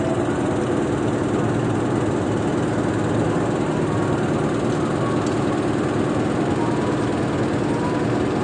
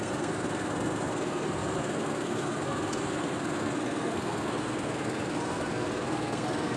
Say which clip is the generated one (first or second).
second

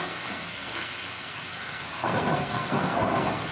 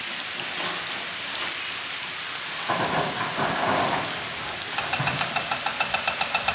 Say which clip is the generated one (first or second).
first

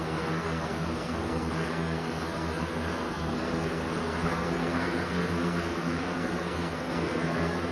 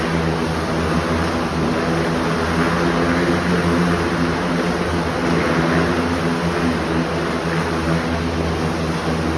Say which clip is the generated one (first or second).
first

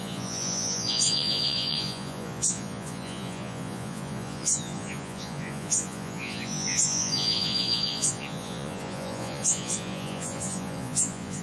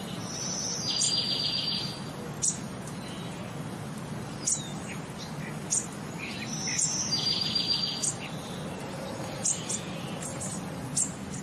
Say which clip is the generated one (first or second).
first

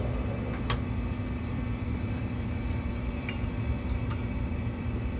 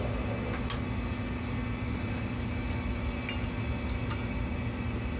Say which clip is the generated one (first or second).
first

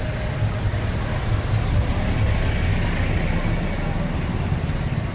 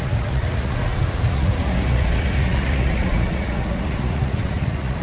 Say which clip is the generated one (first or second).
second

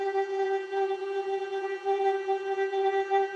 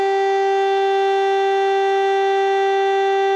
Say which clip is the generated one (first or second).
first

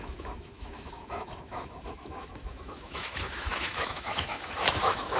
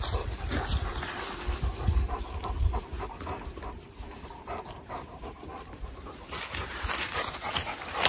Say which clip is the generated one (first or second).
first